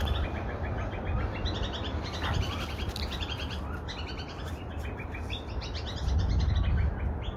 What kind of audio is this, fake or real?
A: real